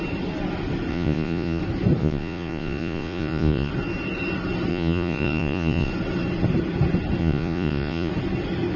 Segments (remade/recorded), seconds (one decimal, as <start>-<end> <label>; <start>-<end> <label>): 0.0-0.9 recorded; 0.9-1.6 remade; 1.6-2.0 recorded; 2.0-3.7 remade; 3.7-4.7 recorded; 4.7-5.9 remade; 5.9-7.2 recorded; 7.2-8.1 remade; 8.1-8.8 recorded